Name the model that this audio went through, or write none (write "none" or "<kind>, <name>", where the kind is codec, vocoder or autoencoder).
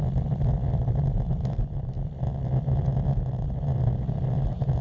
none